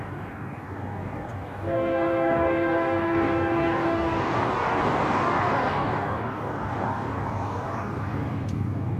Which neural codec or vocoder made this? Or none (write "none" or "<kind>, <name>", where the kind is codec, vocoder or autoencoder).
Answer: codec, DAC